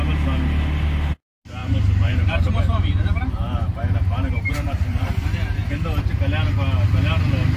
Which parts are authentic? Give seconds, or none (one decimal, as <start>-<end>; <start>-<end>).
0.0-1.6; 5.7-7.6